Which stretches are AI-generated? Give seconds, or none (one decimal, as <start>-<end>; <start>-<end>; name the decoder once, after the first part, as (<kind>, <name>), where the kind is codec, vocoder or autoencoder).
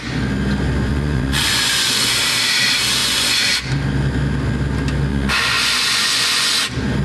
0.9-2.1 (vocoder, Vocos); 3.0-3.7; 5.1-6.5